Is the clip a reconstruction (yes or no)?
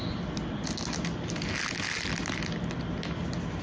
no